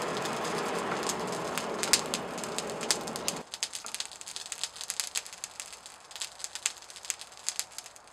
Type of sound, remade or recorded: recorded